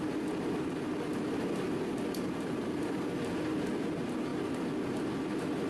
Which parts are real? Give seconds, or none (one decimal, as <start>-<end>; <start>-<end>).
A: 0.0-1.1; 3.2-5.7